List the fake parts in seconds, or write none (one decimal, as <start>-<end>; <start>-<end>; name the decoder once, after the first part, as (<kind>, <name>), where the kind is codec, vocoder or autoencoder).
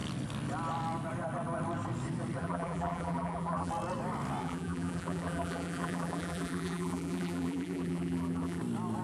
2.4-3.7 (vocoder, BigVGAN v2); 4.4-8.6